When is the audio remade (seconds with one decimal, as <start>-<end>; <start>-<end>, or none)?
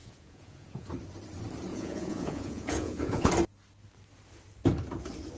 0.0-0.9; 1.7-3.3